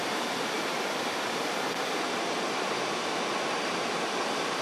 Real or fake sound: real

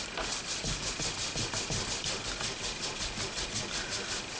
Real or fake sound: real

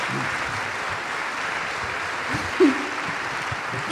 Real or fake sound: real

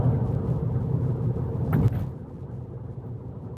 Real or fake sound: real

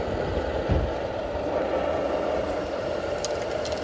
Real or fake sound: real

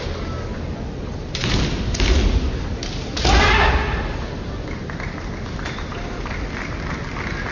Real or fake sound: real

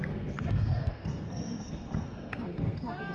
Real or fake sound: fake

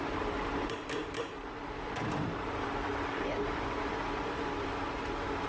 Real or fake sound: fake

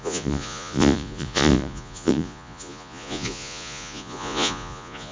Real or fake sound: fake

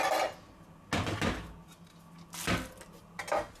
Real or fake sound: real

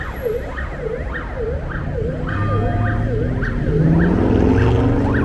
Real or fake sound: real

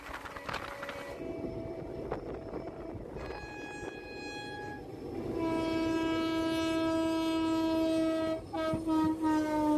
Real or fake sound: real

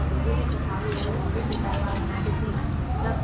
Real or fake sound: real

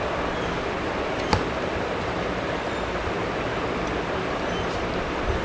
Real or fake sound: real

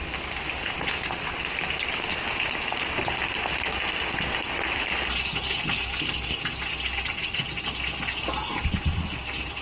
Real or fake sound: real